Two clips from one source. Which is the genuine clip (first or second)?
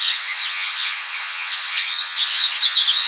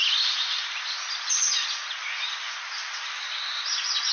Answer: second